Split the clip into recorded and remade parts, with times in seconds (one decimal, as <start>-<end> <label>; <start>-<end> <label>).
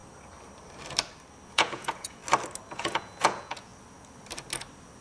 0.0-1.5 recorded; 1.5-2.2 remade; 2.2-2.7 recorded; 2.7-3.7 remade; 3.7-5.0 recorded